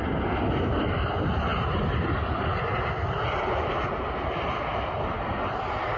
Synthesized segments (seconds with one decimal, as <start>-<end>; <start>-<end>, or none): none